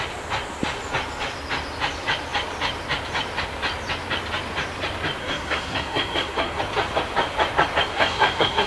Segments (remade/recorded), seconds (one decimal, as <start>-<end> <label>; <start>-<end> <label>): 0.0-5.2 recorded; 5.2-6.6 remade; 6.6-7.9 recorded; 7.9-8.7 remade